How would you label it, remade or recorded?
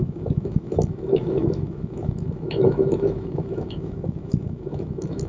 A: remade